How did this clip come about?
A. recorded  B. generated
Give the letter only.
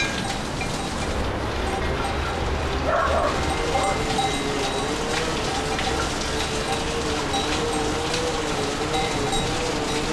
A